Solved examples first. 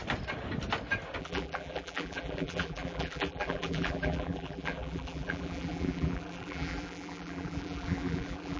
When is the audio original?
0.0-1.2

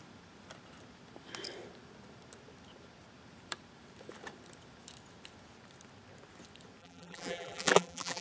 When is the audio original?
0.0-6.8

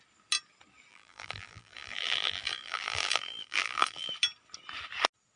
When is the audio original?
0.0-0.9; 4.1-5.4

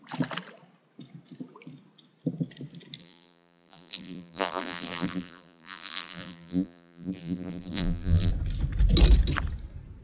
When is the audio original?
0.0-3.0; 8.3-10.0

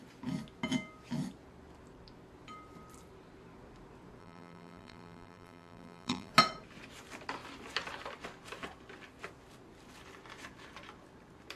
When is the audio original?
0.0-4.2; 6.3-11.6

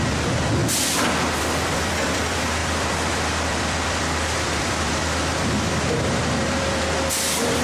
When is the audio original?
0.6-1.4